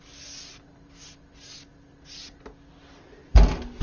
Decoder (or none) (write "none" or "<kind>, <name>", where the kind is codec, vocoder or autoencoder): none